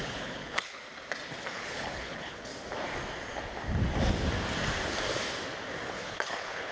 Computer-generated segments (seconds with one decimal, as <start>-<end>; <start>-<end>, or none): 0.0-0.8; 1.5-2.5; 5.9-6.7